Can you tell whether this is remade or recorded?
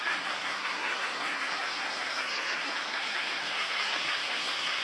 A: remade